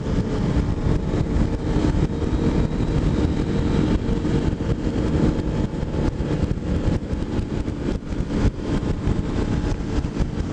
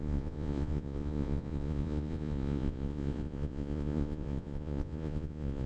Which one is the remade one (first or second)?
second